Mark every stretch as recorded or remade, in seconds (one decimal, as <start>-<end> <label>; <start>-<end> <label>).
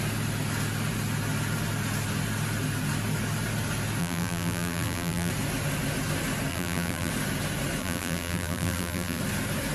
0.0-4.0 recorded; 4.0-5.3 remade; 5.3-6.5 recorded; 6.5-7.1 remade; 7.1-7.8 recorded; 7.8-9.2 remade; 9.2-9.7 recorded